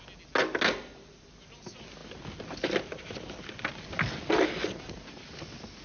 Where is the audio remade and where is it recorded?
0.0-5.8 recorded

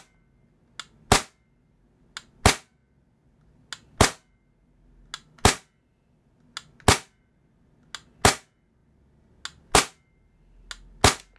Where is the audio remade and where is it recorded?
0.0-11.4 recorded

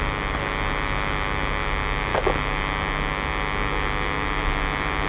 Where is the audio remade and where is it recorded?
0.0-5.1 recorded

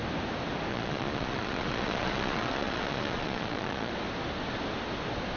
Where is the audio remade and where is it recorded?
0.0-0.7 recorded; 0.7-3.9 remade; 3.9-5.4 recorded

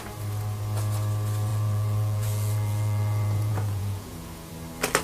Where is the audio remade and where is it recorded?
0.0-1.5 recorded; 1.5-4.5 remade; 4.5-5.0 recorded

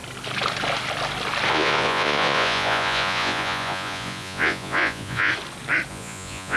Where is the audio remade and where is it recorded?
0.0-1.5 recorded; 1.5-5.3 remade; 5.3-5.9 recorded; 5.9-6.6 remade

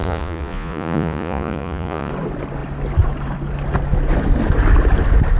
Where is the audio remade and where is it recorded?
0.0-2.1 remade; 2.1-5.4 recorded